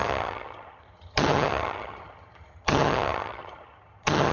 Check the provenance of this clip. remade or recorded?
remade